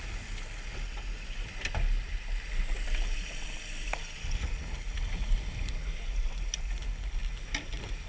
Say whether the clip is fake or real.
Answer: real